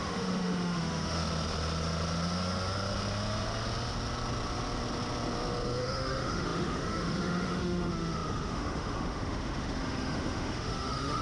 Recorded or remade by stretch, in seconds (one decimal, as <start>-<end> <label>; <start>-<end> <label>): 0.0-1.2 remade; 1.2-5.8 recorded; 5.8-11.2 remade